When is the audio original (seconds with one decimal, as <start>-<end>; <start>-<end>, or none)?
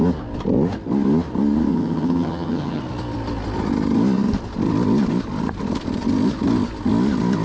0.0-1.7; 2.8-7.4